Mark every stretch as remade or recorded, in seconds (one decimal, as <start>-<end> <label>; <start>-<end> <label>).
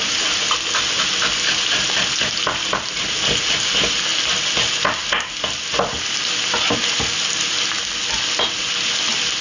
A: 0.0-9.4 recorded